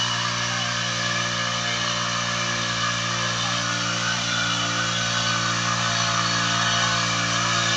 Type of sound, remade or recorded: recorded